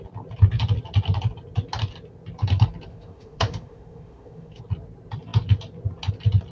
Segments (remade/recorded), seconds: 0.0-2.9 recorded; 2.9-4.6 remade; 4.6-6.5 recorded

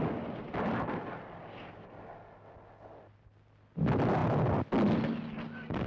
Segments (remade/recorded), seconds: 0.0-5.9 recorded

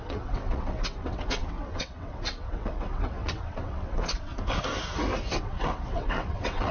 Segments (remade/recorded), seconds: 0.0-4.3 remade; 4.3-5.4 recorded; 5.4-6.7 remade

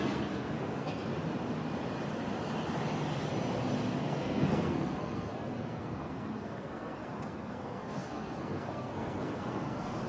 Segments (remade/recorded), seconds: 0.0-1.1 remade; 1.1-4.0 recorded; 4.0-10.1 remade